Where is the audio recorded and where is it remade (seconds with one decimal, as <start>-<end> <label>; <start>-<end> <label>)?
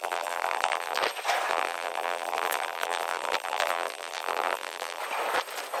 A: 0.0-1.0 remade; 1.0-1.5 recorded; 1.5-5.0 remade; 5.0-5.8 recorded